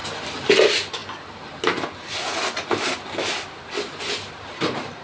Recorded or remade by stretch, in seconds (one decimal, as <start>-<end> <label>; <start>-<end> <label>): 0.0-5.0 recorded

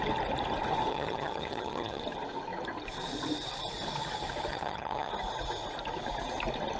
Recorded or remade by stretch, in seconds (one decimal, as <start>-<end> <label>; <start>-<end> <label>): 0.0-0.9 recorded; 0.9-2.0 remade; 2.0-4.5 recorded; 4.5-5.1 remade; 5.1-6.8 recorded

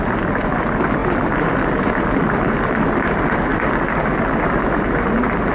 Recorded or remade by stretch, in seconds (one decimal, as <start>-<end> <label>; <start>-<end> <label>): 0.0-5.5 recorded

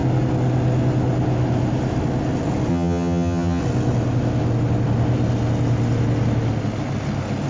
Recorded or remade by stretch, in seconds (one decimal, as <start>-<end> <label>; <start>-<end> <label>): 0.0-2.7 recorded; 2.7-3.6 remade; 3.6-7.5 recorded

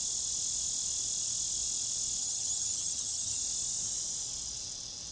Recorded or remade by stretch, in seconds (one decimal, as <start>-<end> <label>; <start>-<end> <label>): 0.0-2.2 recorded; 2.2-3.4 remade; 3.4-5.1 recorded

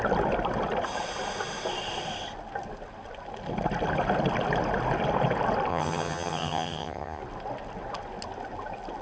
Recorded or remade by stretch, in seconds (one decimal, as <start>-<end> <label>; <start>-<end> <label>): 0.0-5.7 recorded; 5.7-7.2 remade; 7.2-9.0 recorded

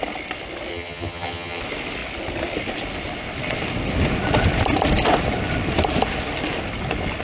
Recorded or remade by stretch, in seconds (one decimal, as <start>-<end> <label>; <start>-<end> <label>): 0.0-0.7 recorded; 0.7-1.6 remade; 1.6-7.2 recorded

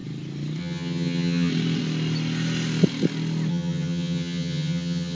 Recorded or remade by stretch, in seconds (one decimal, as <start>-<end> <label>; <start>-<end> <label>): 0.0-0.6 recorded; 0.6-1.5 remade; 1.5-3.5 recorded; 3.5-5.1 remade